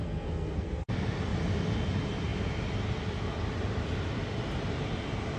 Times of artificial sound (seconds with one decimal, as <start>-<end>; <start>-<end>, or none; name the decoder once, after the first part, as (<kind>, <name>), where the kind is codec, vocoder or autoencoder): 0.0-0.9 (codec, SNAC)